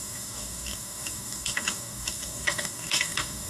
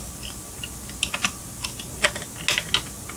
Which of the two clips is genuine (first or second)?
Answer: second